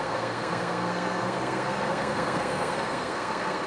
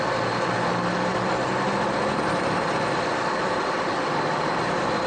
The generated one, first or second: first